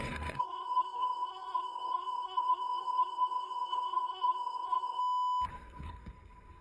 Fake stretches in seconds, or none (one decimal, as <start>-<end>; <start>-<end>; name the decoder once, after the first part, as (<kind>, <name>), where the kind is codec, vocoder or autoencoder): 0.0-5.0 (codec, SNAC); 5.5-6.6